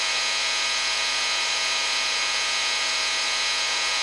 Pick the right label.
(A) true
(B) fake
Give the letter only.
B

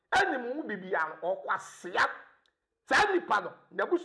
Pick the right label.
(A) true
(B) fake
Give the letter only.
A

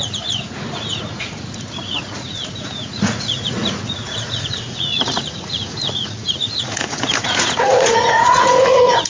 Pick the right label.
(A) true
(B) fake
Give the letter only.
B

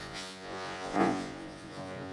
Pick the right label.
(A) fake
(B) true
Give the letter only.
A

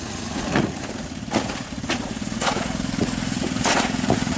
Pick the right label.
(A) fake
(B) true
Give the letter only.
A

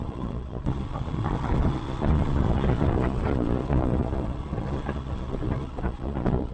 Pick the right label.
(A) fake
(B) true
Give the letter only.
A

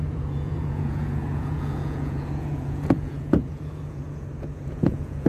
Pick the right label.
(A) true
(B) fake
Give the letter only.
B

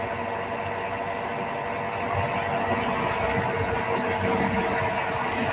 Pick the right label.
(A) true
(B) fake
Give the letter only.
A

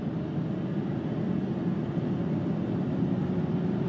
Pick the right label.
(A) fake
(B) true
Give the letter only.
B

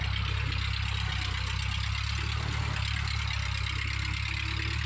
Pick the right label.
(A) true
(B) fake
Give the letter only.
A